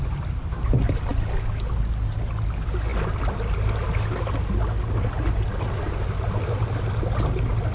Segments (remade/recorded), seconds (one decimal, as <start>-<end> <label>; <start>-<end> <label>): 0.0-7.7 recorded